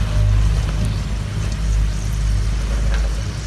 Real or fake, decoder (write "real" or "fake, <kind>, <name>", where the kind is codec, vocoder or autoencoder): real